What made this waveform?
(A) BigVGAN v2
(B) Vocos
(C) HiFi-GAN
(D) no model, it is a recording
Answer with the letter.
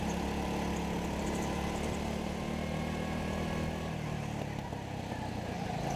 D